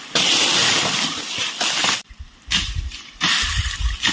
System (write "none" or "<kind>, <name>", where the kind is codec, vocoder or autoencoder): vocoder, BigVGAN v2